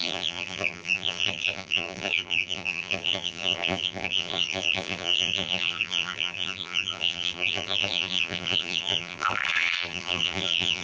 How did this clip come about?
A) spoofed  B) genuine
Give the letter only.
A